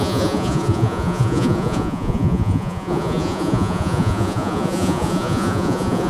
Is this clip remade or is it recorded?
remade